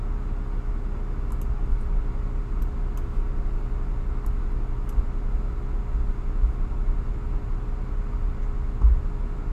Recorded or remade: recorded